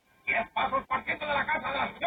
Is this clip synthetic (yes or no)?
no